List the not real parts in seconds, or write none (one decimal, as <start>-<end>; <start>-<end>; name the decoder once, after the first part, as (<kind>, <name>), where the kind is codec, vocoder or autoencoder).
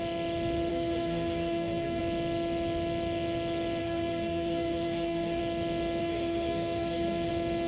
0.7-2.0 (codec, SNAC); 3.8-5.4; 6.0-7.3